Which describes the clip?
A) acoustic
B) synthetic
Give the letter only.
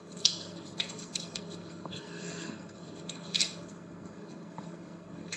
B